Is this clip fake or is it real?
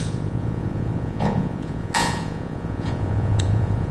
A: fake